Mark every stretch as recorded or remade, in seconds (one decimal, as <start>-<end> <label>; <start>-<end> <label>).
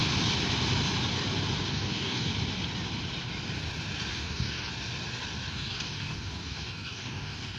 0.0-1.7 recorded; 1.7-2.3 remade; 2.3-4.1 recorded; 4.1-4.7 remade; 4.7-5.5 recorded; 5.5-7.6 remade